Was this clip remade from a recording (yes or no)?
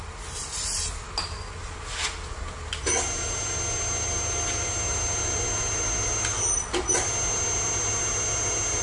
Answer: no